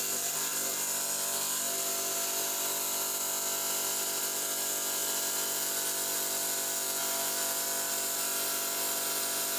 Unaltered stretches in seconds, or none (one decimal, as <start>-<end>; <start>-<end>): 0.0-9.6